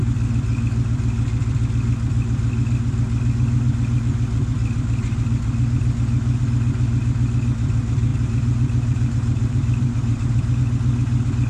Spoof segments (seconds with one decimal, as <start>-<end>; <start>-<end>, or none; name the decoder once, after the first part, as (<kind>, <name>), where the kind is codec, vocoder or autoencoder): 8.1-10.6 (vocoder, BigVGAN v2)